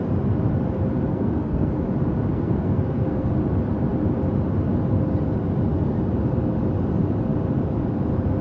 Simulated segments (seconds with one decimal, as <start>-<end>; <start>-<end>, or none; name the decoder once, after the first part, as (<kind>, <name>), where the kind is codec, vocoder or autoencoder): 1.1-1.7 (codec, SNAC); 2.3-3.3